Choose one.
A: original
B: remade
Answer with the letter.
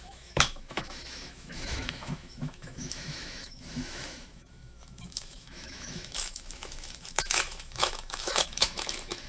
B